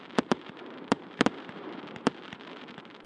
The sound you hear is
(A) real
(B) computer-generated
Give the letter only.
B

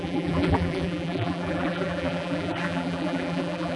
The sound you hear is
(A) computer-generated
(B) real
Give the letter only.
A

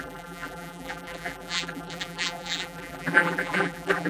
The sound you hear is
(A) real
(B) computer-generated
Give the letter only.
B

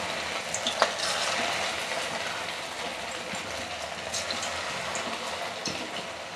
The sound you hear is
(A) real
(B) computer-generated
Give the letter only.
A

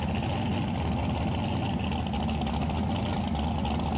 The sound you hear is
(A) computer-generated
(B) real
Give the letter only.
B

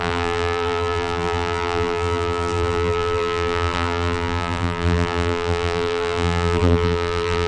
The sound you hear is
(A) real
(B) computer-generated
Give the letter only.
B